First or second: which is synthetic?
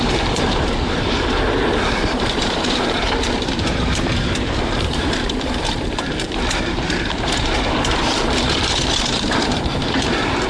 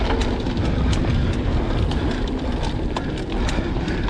first